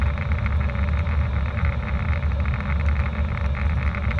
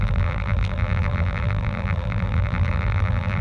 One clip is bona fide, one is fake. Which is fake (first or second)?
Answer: second